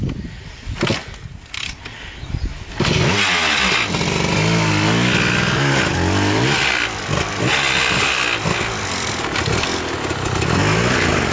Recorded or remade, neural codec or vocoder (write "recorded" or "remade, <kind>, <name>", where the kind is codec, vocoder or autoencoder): recorded